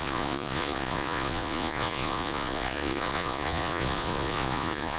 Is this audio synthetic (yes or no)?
yes